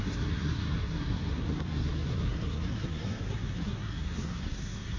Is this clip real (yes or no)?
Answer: no